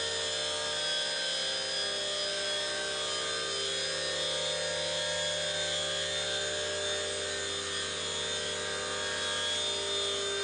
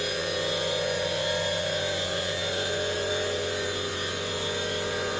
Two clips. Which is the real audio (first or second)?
first